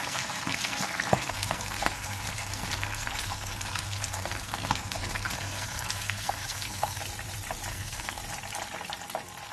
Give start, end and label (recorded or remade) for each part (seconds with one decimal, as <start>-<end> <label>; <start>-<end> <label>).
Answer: 0.0-7.0 remade; 7.0-7.7 recorded; 7.7-8.2 remade; 8.2-9.5 recorded